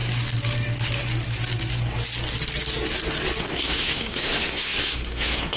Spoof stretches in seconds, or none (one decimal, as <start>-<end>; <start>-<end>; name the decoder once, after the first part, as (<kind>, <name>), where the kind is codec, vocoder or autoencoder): 3.4-5.6 (codec, SNAC)